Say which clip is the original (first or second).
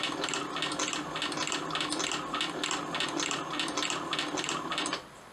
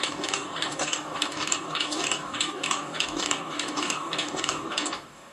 first